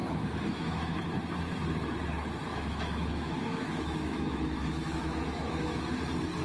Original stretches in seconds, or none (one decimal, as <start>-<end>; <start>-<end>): 1.0-2.5; 5.8-6.4